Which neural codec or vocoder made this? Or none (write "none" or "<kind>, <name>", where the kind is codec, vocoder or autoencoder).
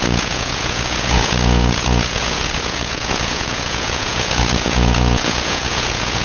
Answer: vocoder, Vocos